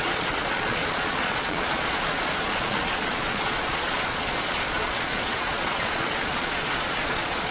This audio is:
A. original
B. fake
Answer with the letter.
B